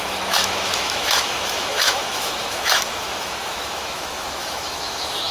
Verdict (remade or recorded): remade